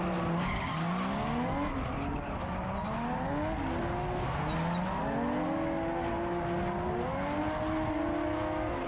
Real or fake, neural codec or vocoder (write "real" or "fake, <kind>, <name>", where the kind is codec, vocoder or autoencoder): real